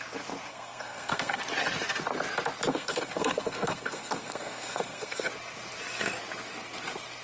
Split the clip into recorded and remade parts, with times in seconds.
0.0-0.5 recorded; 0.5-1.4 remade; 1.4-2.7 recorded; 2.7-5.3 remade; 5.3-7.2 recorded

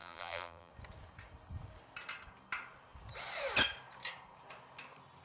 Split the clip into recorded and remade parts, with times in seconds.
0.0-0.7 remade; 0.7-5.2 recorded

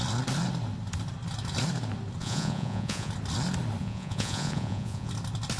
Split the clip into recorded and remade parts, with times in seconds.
0.0-2.2 recorded; 2.2-3.1 remade; 3.1-3.8 recorded; 3.8-5.1 remade; 5.1-5.6 recorded

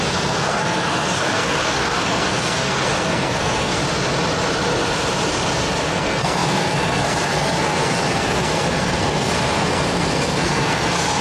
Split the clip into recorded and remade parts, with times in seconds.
0.0-3.8 remade; 3.8-5.8 recorded; 5.8-11.2 remade

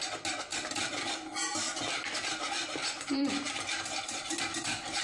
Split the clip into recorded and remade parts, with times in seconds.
0.0-0.5 recorded; 0.5-2.4 remade; 2.4-2.8 recorded; 2.8-4.4 remade; 4.4-5.0 recorded

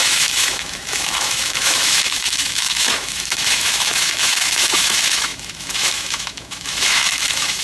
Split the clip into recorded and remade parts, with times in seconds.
0.0-7.6 remade

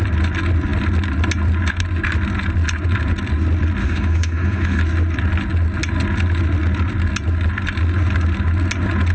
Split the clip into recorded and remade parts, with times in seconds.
0.0-3.8 recorded; 3.8-4.8 remade; 4.8-9.1 recorded

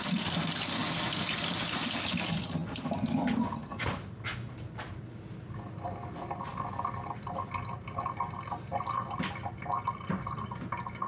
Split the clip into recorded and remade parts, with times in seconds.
0.0-11.1 recorded